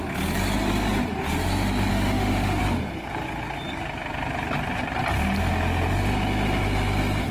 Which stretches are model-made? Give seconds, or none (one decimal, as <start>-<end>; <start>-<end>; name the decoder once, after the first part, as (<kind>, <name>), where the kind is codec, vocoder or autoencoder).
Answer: 1.9-2.6 (autoencoder, DAC-VAE)